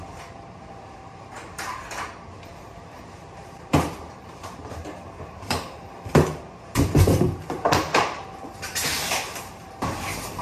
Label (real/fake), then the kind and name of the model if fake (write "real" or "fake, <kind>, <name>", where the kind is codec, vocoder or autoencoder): fake, vocoder, BigVGAN v2